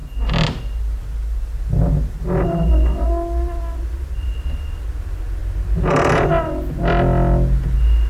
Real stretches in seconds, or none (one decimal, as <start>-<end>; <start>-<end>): 0.0-8.1